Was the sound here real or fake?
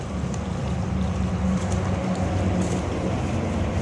real